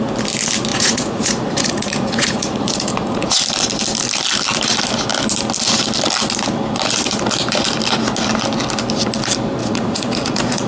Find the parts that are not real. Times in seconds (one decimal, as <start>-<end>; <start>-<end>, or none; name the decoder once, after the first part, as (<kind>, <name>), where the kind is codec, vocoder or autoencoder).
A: 0.7-3.4 (vocoder, Vocos); 9.6-10.7